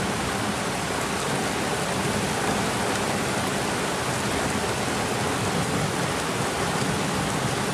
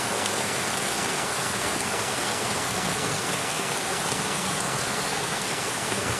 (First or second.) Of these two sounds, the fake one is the second